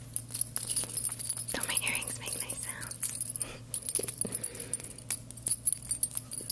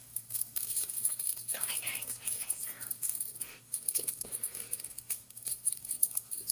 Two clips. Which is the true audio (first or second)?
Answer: first